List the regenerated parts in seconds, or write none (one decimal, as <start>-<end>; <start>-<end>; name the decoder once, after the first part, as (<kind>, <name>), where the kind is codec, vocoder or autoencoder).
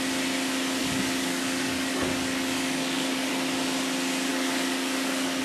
0.8-3.3 (codec, DAC); 4.3-5.4